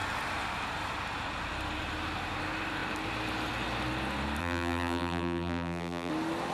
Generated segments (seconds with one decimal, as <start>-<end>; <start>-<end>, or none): 4.4-6.1